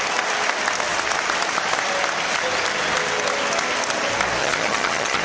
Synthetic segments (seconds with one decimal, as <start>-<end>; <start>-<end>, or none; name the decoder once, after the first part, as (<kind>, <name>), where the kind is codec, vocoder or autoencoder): 4.4-5.2 (vocoder, HiFi-GAN)